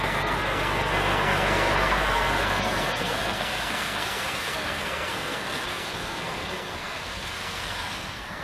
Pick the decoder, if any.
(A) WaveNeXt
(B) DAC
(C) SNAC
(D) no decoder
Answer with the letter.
C